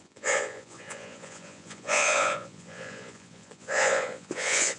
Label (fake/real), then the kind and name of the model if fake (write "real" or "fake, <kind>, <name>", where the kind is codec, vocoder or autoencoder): fake, vocoder, Vocos